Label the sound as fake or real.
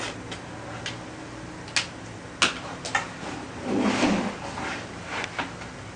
real